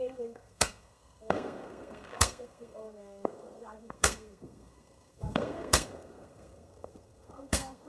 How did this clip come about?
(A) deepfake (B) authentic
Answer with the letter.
A